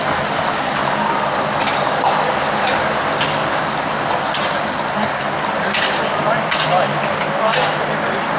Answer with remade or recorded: recorded